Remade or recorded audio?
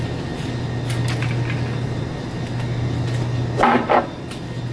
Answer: recorded